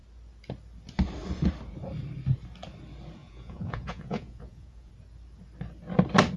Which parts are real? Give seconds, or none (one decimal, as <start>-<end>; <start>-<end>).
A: 0.0-3.2; 4.9-6.4